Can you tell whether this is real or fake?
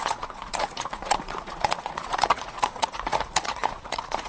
fake